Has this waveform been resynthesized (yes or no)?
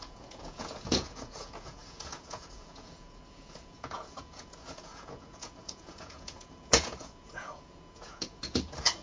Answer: yes